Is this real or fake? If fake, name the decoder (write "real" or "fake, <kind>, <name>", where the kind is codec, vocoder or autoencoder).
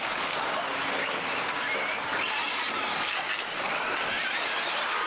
real